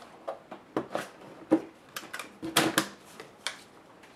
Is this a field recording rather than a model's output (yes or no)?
yes